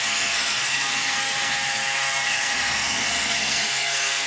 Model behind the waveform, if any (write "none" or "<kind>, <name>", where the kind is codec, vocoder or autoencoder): codec, SNAC